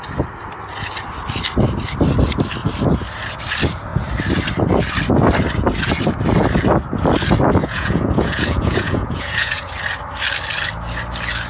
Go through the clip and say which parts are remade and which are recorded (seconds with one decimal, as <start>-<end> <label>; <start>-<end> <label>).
0.0-7.6 recorded; 7.6-9.7 remade; 9.7-11.5 recorded